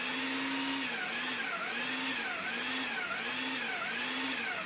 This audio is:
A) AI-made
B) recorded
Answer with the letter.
B